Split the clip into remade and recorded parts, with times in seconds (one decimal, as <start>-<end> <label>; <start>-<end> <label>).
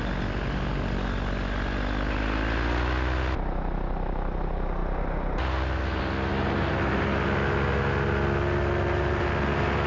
0.0-9.9 recorded